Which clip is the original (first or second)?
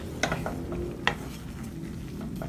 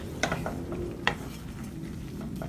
first